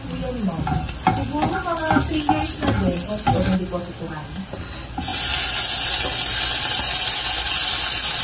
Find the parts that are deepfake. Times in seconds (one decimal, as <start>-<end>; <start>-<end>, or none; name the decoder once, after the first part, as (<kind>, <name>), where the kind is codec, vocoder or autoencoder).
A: none